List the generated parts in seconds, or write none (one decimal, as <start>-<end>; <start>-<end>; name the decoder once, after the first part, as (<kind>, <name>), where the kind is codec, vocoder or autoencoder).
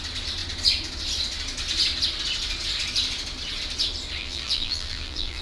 4.2-5.4 (vocoder, BigVGAN v2)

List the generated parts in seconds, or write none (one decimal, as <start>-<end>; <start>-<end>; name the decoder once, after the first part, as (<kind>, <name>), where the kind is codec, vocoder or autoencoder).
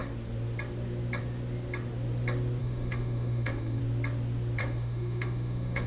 2.6-3.8 (autoencoder, DAC-VAE); 4.6-5.9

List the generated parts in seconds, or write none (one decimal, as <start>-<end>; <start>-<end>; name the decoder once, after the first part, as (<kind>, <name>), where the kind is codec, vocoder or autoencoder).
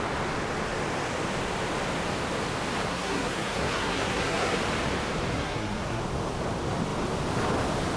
2.9-4.6 (codec, SNAC); 5.3-6.0